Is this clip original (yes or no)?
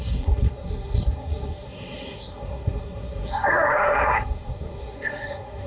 no